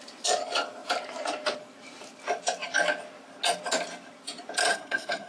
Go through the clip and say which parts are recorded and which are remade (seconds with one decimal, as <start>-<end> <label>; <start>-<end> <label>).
0.0-4.7 recorded; 4.7-5.3 remade